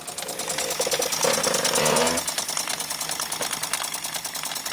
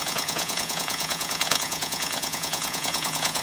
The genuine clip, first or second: first